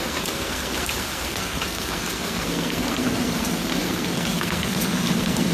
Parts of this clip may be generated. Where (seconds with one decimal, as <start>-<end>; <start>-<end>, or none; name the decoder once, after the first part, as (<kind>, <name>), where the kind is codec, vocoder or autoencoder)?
0.0-5.5 (codec, SNAC)